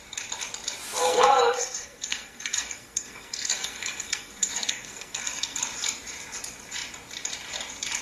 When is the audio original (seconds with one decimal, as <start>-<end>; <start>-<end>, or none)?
0.0-1.0; 5.6-8.0